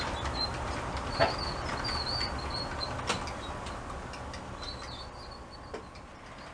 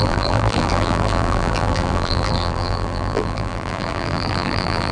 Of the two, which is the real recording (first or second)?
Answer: first